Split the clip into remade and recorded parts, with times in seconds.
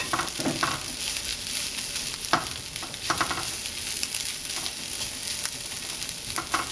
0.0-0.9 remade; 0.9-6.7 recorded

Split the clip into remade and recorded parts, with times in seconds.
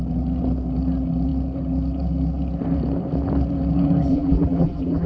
0.0-4.1 recorded; 4.1-5.1 remade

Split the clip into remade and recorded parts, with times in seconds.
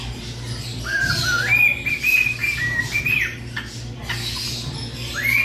0.0-2.4 recorded; 2.4-3.0 remade; 3.0-5.4 recorded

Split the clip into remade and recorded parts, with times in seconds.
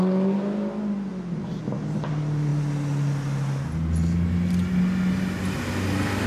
0.0-6.3 recorded